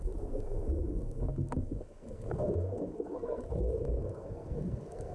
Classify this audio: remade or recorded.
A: remade